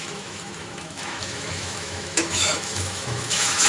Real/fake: fake